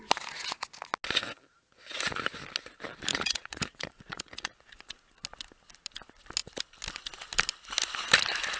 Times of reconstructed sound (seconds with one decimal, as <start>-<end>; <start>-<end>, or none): 3.1-5.1